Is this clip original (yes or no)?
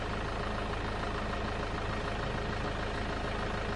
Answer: yes